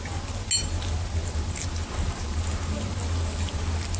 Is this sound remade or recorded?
recorded